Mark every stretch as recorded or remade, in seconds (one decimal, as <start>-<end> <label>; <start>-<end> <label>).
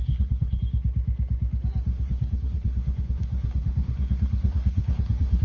0.0-0.6 remade; 0.6-1.9 recorded; 1.9-5.4 remade